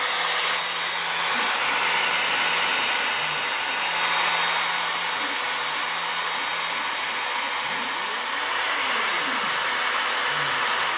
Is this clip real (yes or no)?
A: yes